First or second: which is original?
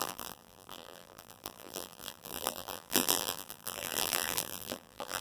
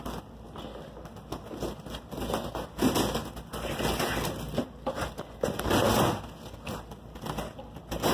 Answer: second